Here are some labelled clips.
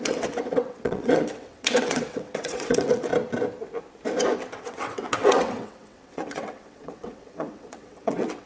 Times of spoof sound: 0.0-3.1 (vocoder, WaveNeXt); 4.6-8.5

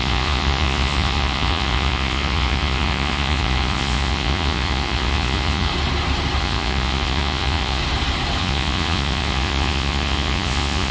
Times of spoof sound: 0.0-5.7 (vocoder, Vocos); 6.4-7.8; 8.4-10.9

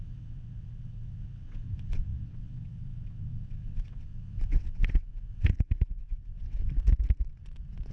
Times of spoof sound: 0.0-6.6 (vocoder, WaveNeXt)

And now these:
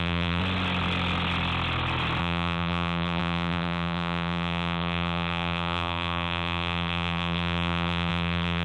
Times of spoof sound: 0.0-0.4 (vocoder, BigVGAN v2); 2.2-8.6